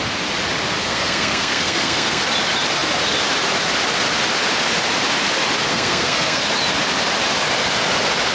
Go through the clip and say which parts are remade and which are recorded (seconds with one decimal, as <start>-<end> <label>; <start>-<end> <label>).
0.0-0.8 recorded; 0.8-2.2 remade; 2.2-5.7 recorded; 5.7-6.4 remade; 6.4-8.3 recorded